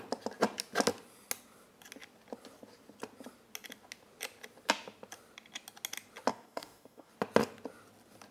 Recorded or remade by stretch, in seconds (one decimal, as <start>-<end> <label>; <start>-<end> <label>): 0.0-6.3 recorded; 6.3-7.1 remade; 7.1-8.3 recorded